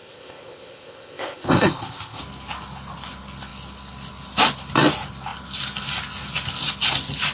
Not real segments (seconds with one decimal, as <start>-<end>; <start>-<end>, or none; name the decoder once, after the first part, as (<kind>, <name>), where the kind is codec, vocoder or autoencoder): 0.0-2.2 (codec, ZipCodec)